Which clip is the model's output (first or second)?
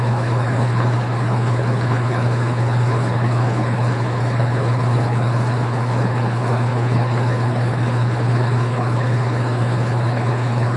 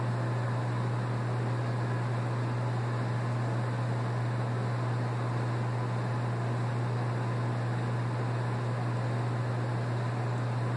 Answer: first